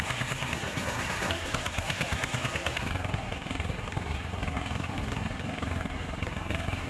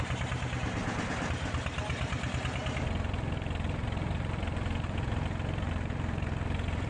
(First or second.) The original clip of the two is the second